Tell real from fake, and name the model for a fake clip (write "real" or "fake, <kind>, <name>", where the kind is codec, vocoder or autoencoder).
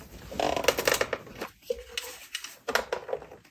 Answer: real